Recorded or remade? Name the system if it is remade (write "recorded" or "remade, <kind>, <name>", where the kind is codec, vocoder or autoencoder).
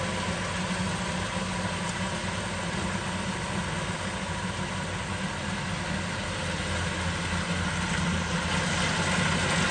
recorded